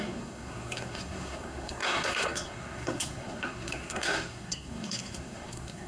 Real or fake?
fake